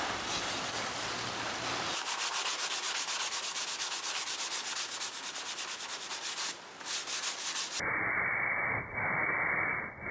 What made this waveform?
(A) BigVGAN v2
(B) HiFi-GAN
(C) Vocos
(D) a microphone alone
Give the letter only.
A